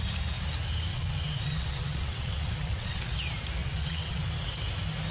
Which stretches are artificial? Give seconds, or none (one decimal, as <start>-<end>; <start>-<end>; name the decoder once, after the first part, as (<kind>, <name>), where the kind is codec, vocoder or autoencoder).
0.9-3.0 (vocoder, WaveNeXt); 3.6-4.2